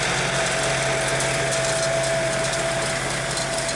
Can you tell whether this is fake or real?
real